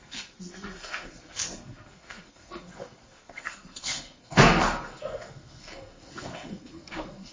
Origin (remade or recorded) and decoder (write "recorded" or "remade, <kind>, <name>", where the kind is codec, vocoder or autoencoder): remade, codec, SNAC